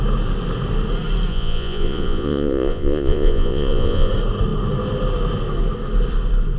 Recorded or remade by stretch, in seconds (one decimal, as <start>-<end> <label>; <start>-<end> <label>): 0.0-1.3 recorded; 1.3-4.1 remade; 4.1-6.6 recorded